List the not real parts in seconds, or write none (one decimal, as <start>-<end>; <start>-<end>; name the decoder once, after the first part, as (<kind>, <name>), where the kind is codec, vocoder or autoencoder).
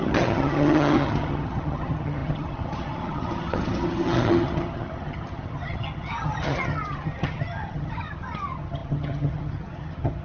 0.0-10.2 (vocoder, HiFi-GAN)